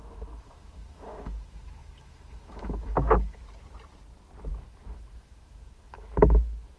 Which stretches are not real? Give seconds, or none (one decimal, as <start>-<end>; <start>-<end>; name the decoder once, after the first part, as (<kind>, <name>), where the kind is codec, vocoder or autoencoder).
0.0-3.4 (autoencoder, DAC-VAE); 4.5-6.8